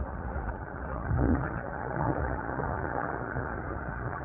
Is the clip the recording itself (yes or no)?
no